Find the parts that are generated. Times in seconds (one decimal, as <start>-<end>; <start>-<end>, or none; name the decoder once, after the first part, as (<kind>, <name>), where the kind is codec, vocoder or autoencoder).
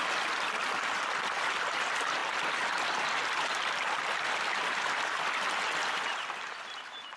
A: none